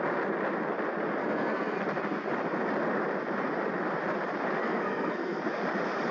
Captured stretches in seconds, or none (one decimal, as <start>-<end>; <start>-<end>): 0.0-1.2; 1.8-4.6; 5.4-6.1